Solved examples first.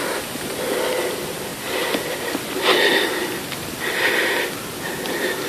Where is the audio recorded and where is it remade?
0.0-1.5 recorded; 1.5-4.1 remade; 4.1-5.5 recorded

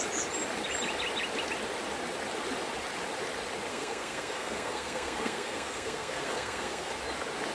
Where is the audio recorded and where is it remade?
0.0-3.7 recorded; 3.7-6.9 remade; 6.9-7.5 recorded

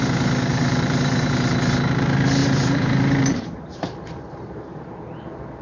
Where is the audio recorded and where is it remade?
0.0-0.5 recorded; 0.5-1.3 remade; 1.3-2.4 recorded; 2.4-4.9 remade; 4.9-5.6 recorded